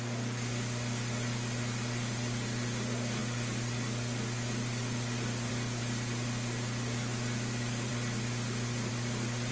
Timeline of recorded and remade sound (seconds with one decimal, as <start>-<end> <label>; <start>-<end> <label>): 0.0-9.5 recorded